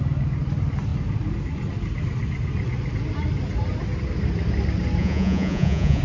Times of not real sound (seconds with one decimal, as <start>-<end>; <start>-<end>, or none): 5.0-6.0